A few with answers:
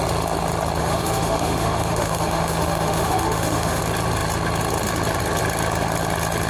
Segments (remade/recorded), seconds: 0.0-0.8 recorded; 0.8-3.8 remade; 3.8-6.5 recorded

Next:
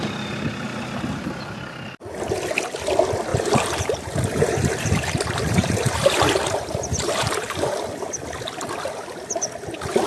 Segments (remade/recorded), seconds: 0.0-3.3 recorded; 3.3-7.9 remade; 7.9-10.1 recorded